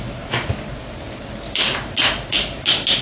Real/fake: real